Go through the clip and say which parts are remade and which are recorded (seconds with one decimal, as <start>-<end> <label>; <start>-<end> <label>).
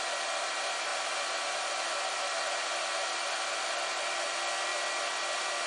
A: 0.0-5.7 recorded